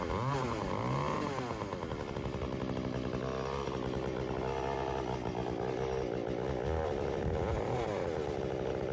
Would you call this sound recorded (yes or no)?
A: yes